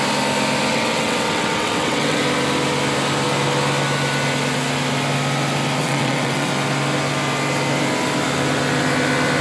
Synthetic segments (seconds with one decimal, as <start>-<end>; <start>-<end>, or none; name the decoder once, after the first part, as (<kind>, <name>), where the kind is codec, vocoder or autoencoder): 0.7-2.2 (vocoder, WaveNeXt); 5.8-6.5